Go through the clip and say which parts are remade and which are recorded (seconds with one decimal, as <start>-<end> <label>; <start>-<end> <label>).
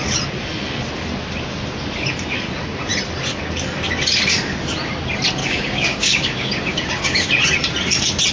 0.0-5.4 recorded; 5.4-7.3 remade; 7.3-8.3 recorded